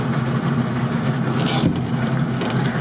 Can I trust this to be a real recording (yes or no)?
yes